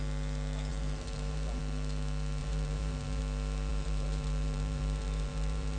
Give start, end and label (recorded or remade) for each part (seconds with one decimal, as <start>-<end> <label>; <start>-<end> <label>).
0.0-0.7 recorded; 0.7-1.6 remade; 1.6-2.4 recorded; 2.4-3.2 remade; 3.2-3.7 recorded; 3.7-5.8 remade